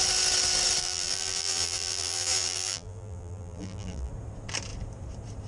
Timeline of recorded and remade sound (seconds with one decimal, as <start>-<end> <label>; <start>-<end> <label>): 0.0-0.8 recorded; 0.8-4.1 remade; 4.1-5.5 recorded